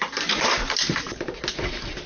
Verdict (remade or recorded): remade